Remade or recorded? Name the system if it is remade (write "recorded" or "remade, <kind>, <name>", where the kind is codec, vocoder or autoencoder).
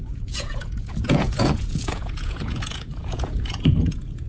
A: remade, vocoder, Vocos